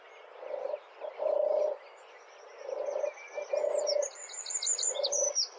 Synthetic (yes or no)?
yes